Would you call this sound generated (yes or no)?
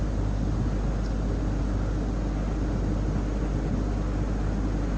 no